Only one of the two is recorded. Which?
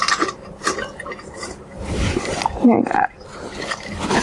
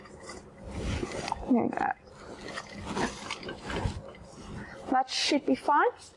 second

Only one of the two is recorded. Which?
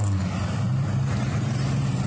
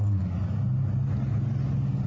second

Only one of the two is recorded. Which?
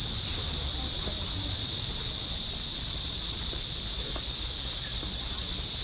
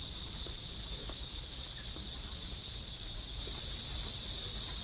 first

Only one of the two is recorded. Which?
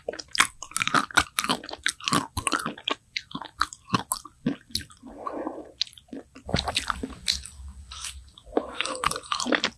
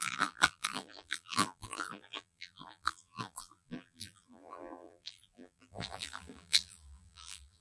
first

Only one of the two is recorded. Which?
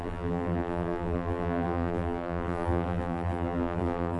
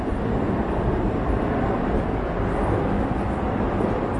second